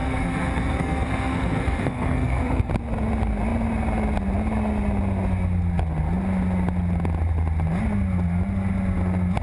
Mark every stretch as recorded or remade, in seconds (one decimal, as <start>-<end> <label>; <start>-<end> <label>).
0.0-2.7 remade; 2.7-9.4 recorded